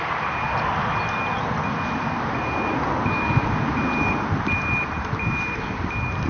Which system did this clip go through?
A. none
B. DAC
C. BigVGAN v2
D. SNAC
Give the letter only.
A